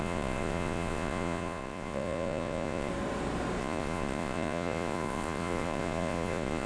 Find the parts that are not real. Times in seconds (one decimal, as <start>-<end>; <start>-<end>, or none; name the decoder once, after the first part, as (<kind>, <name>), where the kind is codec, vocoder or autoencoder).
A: 0.0-2.9 (vocoder, Vocos); 3.6-6.7